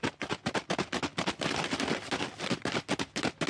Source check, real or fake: real